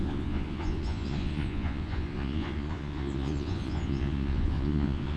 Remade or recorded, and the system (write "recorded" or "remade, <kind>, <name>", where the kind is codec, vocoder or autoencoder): remade, vocoder, Vocos